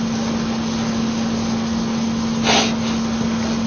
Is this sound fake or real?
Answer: real